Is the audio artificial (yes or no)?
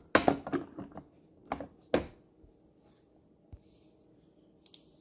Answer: no